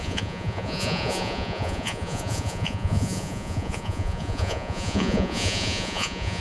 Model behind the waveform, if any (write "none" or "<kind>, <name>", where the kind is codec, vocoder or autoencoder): vocoder, Vocos